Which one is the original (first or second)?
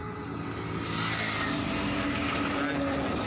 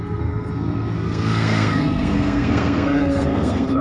first